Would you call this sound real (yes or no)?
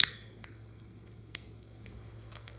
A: no